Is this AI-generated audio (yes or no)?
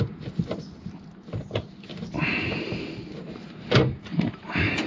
no